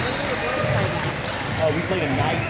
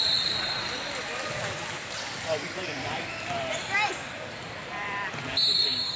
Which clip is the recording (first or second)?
first